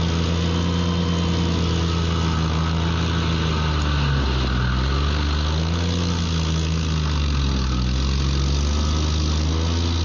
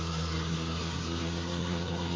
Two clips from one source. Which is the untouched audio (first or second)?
first